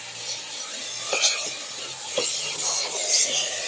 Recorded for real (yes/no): yes